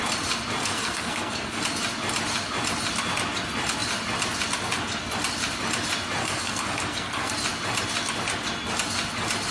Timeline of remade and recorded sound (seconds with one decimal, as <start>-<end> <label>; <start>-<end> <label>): 0.0-0.6 recorded; 0.6-1.6 remade; 1.6-6.2 recorded; 6.2-7.3 remade; 7.3-9.5 recorded